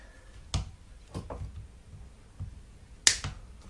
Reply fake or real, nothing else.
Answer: real